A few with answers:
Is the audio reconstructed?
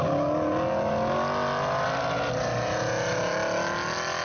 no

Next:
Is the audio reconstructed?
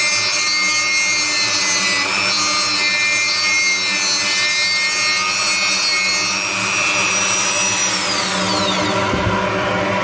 no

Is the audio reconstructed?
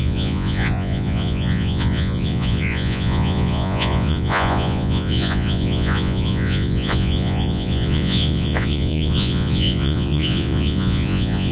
yes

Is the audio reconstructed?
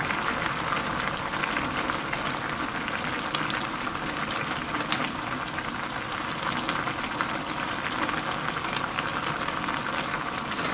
no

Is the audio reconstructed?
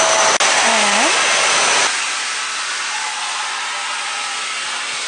no